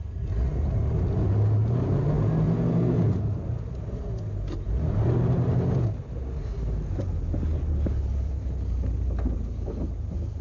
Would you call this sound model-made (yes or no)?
no